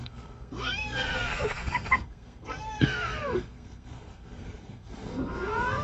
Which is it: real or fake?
fake